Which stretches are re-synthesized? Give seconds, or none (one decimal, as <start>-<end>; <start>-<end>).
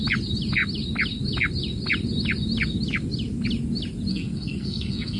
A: 4.1-5.2